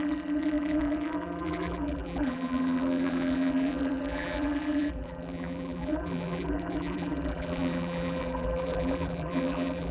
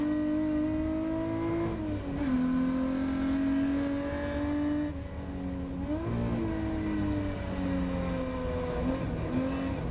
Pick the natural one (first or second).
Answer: second